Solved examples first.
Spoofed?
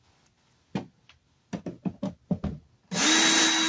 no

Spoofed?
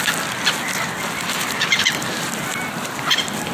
no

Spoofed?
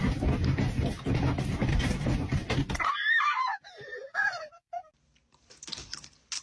no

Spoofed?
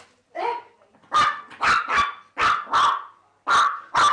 no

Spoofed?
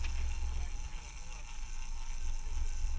no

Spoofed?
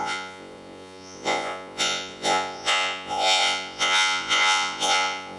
yes